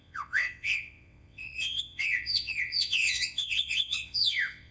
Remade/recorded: remade